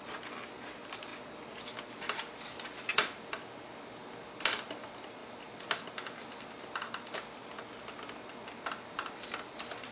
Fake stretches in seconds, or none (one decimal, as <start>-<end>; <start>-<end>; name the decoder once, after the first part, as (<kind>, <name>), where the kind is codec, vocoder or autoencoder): none